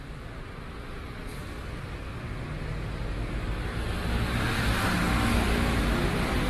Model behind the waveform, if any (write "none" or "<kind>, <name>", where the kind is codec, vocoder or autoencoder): none